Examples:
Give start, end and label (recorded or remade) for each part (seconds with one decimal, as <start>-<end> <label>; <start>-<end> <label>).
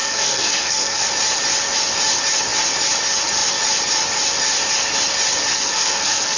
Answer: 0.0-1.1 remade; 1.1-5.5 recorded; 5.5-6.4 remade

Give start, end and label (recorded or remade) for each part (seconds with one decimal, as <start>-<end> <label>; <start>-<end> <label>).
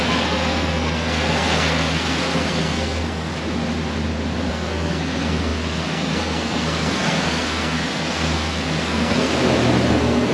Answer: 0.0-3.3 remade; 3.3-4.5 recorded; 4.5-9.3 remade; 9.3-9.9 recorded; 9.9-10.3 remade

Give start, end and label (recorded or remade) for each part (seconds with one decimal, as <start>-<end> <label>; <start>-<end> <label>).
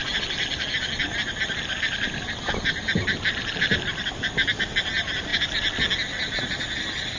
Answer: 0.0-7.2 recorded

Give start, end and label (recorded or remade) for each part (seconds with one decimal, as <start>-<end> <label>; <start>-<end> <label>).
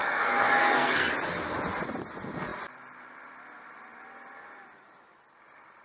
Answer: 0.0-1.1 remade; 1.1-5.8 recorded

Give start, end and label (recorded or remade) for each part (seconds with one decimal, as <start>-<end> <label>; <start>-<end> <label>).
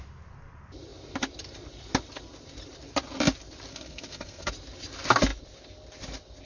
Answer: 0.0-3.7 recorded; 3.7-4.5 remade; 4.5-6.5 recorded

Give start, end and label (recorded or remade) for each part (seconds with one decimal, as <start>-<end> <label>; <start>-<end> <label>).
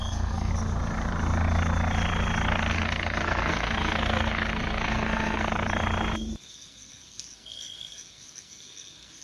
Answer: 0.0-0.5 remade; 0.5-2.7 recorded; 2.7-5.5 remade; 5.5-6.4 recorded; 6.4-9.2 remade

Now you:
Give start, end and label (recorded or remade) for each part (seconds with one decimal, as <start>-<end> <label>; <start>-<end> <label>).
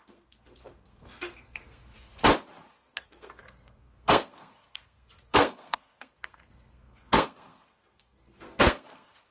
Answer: 0.0-2.2 remade; 2.2-2.7 recorded; 2.7-9.3 remade